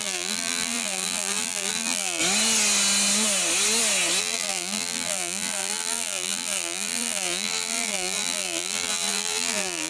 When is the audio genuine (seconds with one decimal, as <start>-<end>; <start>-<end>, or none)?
2.2-4.2

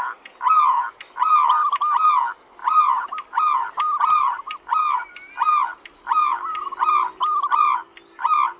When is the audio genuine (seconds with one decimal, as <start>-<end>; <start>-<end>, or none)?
0.0-1.6; 2.2-2.6; 3.4-8.6

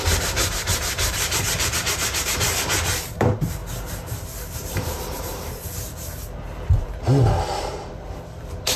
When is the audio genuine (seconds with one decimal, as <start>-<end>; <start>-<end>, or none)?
none

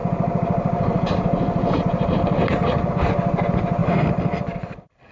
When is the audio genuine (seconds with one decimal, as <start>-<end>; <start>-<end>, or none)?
0.0-3.8

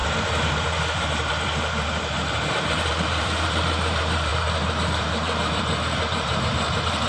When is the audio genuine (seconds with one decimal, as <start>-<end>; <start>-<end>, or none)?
none

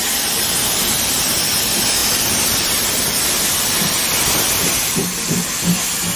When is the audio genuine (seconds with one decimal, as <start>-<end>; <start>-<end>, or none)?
0.0-2.0; 5.5-6.2

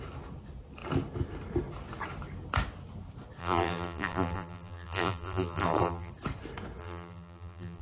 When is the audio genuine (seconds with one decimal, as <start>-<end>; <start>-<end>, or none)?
0.0-3.4; 6.1-6.8